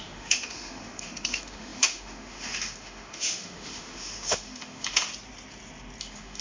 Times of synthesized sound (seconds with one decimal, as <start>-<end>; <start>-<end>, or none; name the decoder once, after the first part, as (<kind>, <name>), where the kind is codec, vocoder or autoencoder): 0.0-5.1 (autoencoder, DAC-VAE); 6.0-6.4